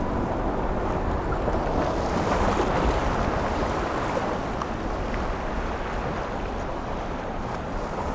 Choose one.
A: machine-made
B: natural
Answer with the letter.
B